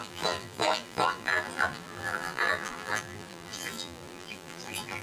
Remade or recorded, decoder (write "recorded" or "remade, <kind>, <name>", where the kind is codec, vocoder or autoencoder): remade, vocoder, BigVGAN v2